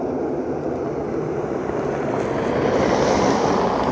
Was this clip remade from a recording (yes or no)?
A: no